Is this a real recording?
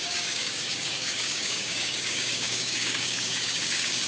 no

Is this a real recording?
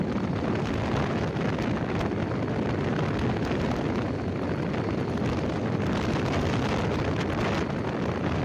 yes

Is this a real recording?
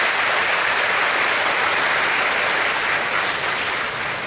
yes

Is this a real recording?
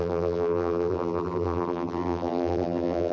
no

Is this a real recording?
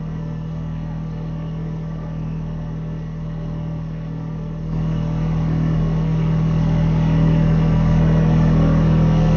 no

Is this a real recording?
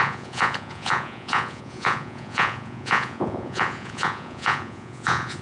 no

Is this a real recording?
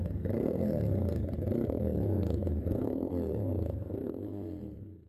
no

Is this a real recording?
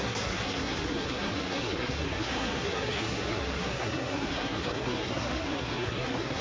no